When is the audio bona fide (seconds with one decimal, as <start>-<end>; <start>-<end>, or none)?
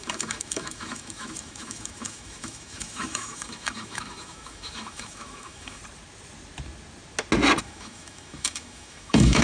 5.8-7.6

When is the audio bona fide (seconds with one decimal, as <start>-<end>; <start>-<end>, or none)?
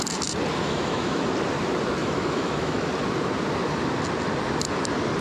0.0-0.6; 1.3-2.0; 2.9-5.2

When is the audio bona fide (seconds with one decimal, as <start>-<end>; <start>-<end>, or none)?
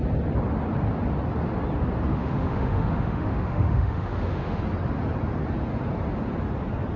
0.0-2.1; 4.6-7.0